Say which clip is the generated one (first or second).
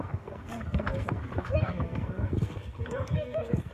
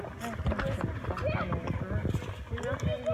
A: first